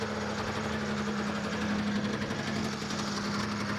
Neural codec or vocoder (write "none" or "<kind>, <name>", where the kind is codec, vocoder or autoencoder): none